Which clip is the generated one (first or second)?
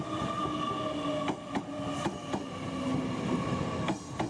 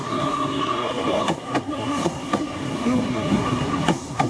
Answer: second